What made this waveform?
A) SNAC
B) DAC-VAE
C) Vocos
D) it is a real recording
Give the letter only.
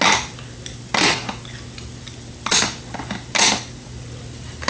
D